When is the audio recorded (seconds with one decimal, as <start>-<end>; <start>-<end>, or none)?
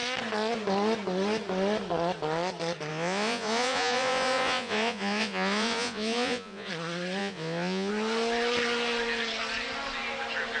0.0-2.9; 6.7-7.2; 7.9-10.6